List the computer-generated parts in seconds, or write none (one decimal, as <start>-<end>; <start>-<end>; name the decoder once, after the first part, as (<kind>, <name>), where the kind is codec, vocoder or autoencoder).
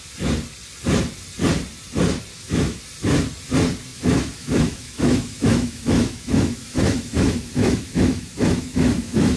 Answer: 2.3-2.8 (autoencoder, DAC-VAE); 3.9-9.4